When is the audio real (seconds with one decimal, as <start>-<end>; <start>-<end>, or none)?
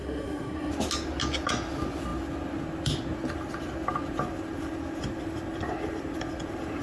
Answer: 0.7-6.8